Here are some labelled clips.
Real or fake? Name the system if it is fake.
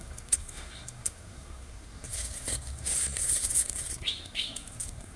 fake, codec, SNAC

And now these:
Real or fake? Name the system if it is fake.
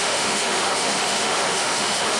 fake, autoencoder, DAC-VAE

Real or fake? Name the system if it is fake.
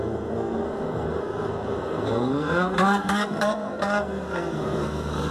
fake, codec, SNAC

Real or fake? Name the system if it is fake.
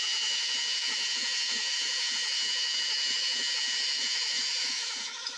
fake, autoencoder, DAC-VAE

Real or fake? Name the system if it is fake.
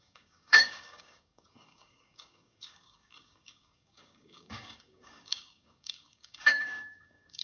fake, codec, DAC